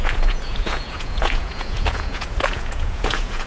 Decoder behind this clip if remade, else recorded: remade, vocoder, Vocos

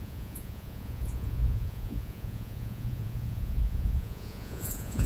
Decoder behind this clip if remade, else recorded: remade, vocoder, Vocos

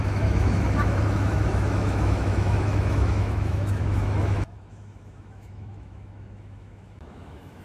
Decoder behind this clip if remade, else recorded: remade, autoencoder, DAC-VAE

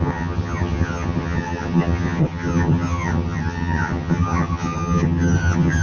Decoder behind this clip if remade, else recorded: remade, vocoder, HiFi-GAN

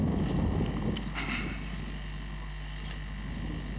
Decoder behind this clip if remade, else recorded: recorded